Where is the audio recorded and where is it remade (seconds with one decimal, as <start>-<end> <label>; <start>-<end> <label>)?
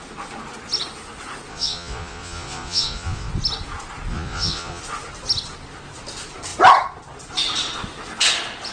0.0-1.5 recorded; 1.5-3.3 remade; 3.3-4.1 recorded; 4.1-4.8 remade; 4.8-8.7 recorded